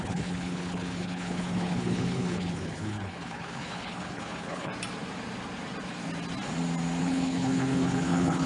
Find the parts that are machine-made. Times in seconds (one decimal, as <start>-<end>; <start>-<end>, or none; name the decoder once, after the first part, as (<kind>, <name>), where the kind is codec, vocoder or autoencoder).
0.0-4.7 (codec, HILCodec); 7.0-8.5